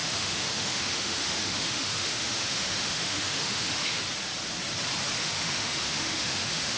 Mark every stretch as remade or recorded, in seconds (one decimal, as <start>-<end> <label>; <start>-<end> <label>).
0.0-4.0 remade; 4.0-5.2 recorded; 5.2-6.8 remade